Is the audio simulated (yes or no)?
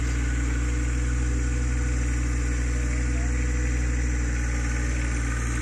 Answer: no